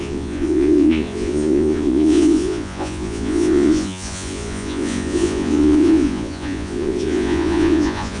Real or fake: fake